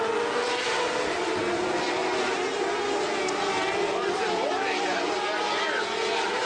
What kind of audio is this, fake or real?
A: real